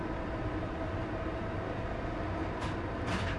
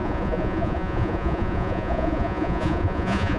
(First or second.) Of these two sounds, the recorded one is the first